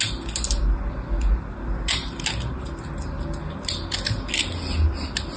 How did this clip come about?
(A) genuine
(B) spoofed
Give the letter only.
A